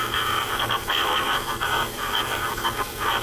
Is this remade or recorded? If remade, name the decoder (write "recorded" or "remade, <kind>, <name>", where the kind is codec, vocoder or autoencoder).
remade, codec, SNAC